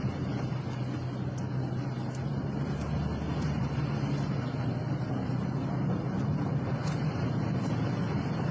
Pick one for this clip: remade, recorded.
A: recorded